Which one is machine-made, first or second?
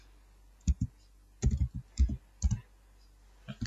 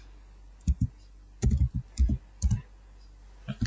second